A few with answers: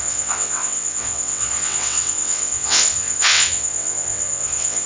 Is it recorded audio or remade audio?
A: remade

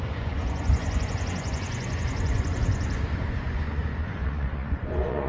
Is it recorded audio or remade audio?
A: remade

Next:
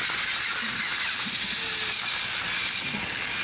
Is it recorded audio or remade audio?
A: recorded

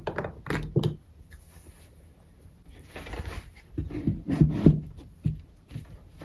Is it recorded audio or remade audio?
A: recorded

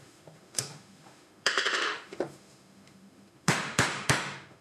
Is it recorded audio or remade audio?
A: remade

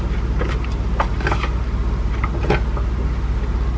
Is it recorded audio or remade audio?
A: recorded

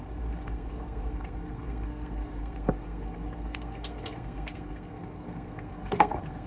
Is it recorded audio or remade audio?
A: remade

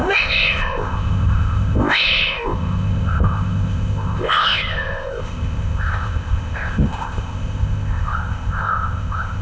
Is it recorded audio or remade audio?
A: remade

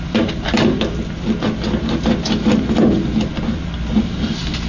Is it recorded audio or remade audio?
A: recorded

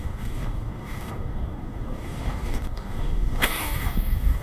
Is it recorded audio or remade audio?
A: remade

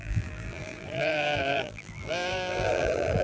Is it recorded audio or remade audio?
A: remade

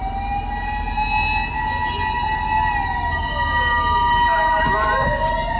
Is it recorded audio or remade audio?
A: recorded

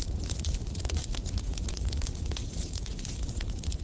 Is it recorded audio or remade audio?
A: remade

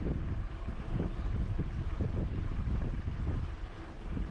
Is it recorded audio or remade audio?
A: remade